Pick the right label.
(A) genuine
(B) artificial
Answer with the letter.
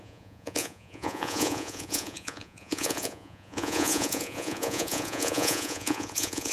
B